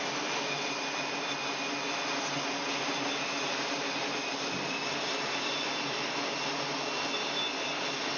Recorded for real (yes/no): yes